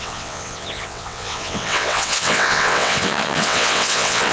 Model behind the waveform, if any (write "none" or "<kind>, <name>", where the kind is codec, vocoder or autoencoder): vocoder, WaveNeXt